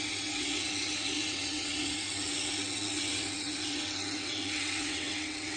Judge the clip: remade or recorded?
remade